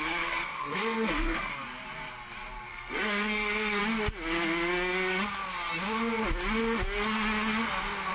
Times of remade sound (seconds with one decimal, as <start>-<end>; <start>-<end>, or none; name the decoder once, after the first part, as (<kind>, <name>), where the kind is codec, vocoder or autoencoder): 0.0-1.5 (codec, SNAC); 2.7-3.8